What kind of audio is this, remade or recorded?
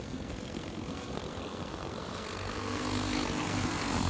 remade